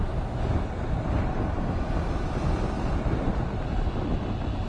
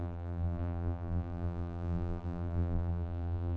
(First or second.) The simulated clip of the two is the second